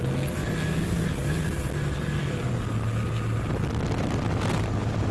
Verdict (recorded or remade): recorded